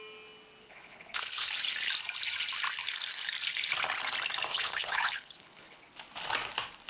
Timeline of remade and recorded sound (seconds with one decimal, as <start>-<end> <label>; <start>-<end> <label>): 0.0-0.6 recorded; 0.6-1.5 remade; 1.5-4.5 recorded; 4.5-5.8 remade; 5.8-6.9 recorded

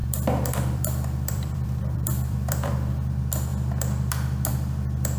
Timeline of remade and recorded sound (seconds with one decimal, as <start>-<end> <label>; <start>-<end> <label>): 0.0-3.1 remade; 3.1-5.2 recorded

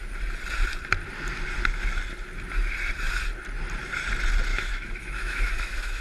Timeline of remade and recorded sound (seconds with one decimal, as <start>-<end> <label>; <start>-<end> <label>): 0.0-4.5 recorded; 4.5-6.0 remade

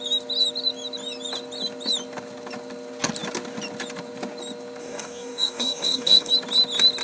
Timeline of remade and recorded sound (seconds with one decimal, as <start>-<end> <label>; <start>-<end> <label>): 0.0-4.8 recorded; 4.8-6.3 remade; 6.3-7.0 recorded

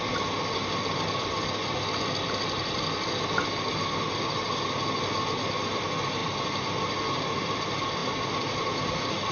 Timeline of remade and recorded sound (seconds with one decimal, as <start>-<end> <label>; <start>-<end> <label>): 0.0-9.3 recorded

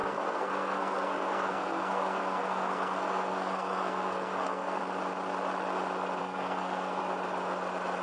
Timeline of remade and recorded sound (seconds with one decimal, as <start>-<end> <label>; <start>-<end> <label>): 0.0-4.8 remade; 4.8-6.2 recorded; 6.2-7.0 remade; 7.0-8.0 recorded

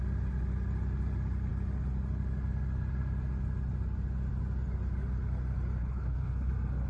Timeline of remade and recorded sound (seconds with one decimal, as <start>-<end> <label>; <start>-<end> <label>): 0.0-5.8 recorded; 5.8-6.5 remade; 6.5-6.9 recorded

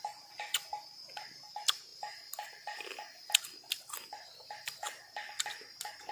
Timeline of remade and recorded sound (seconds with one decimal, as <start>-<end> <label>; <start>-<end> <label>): 0.0-6.1 recorded